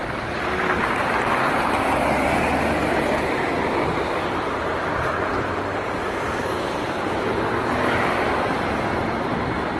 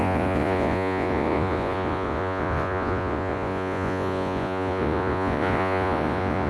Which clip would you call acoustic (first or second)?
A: first